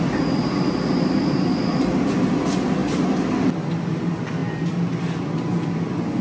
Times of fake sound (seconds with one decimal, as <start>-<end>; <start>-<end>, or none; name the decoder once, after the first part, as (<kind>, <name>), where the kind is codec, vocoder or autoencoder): none